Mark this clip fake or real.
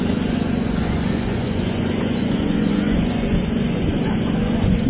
fake